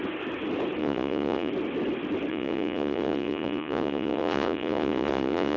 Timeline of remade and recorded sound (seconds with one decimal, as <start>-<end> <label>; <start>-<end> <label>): 0.0-0.8 recorded; 0.8-1.5 remade; 1.5-2.3 recorded; 2.3-5.6 remade

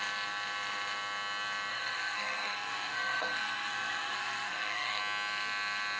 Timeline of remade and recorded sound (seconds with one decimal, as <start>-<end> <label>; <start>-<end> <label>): 0.0-1.7 recorded; 1.7-5.0 remade; 5.0-6.0 recorded

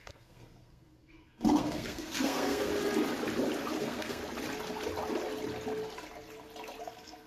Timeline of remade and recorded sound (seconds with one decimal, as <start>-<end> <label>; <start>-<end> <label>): 0.0-2.7 remade; 2.7-3.8 recorded; 3.8-4.2 remade; 4.2-6.8 recorded; 6.8-7.3 remade

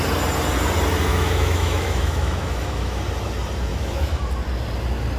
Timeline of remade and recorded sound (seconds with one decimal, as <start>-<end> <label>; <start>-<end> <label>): 0.0-1.1 recorded; 1.1-3.0 remade; 3.0-3.7 recorded; 3.7-4.2 remade; 4.2-5.2 recorded

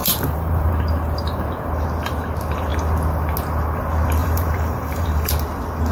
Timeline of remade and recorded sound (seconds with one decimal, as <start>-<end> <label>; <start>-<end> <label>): 0.0-0.7 remade; 0.7-4.2 recorded; 4.2-5.3 remade; 5.3-5.9 recorded